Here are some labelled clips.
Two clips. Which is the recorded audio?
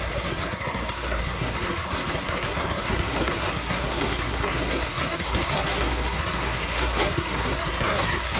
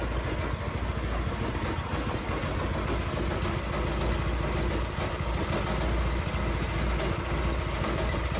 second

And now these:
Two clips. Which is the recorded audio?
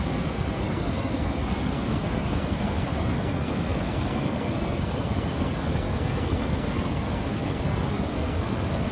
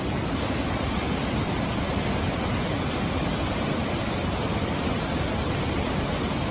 second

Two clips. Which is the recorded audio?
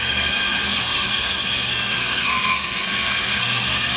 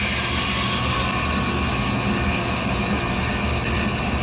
second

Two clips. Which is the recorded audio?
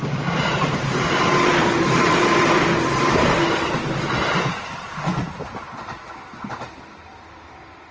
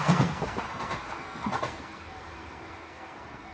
first